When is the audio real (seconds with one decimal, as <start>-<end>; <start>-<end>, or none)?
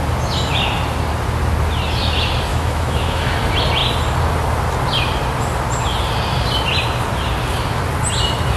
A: 0.0-2.5; 3.3-8.6